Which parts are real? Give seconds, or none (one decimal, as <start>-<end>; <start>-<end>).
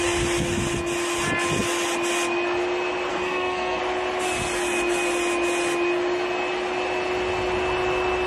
0.0-3.1; 3.8-8.3